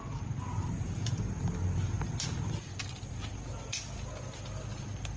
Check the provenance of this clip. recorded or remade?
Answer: recorded